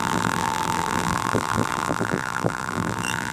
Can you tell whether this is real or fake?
fake